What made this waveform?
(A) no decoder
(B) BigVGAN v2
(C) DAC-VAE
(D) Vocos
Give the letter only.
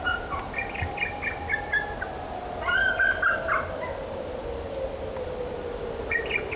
A